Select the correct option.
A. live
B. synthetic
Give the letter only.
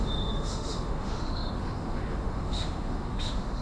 B